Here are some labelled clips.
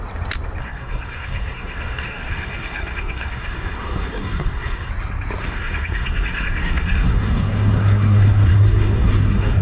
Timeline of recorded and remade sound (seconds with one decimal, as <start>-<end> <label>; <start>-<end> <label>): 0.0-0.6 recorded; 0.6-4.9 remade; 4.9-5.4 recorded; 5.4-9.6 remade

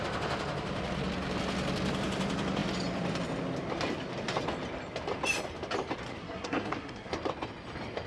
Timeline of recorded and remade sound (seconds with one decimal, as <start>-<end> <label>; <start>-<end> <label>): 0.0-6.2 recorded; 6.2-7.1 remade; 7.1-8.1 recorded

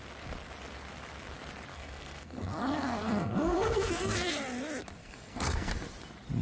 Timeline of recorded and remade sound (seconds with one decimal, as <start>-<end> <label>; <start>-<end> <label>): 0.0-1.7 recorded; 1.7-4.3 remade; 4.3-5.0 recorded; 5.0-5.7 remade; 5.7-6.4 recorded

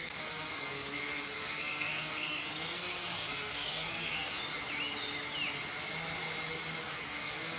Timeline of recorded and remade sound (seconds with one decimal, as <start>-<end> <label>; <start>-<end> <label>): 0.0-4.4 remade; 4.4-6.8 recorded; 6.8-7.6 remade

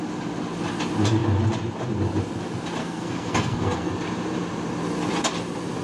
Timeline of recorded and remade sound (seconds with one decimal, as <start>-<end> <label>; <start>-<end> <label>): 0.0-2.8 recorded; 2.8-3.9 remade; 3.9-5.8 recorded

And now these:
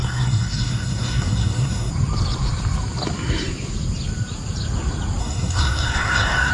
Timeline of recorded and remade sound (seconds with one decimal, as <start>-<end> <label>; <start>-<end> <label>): 0.0-1.9 remade; 1.9-5.2 recorded; 5.2-6.5 remade

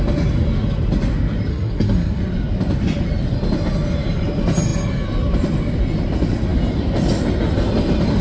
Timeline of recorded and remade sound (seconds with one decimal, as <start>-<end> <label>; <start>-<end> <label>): 0.0-1.5 recorded; 1.5-2.2 remade; 2.2-8.2 recorded